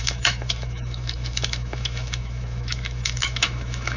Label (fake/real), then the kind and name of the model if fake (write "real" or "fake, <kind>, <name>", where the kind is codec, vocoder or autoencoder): fake, autoencoder, DAC-VAE